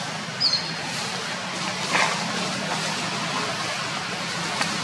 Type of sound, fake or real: real